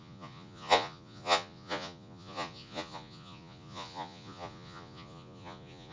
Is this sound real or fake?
fake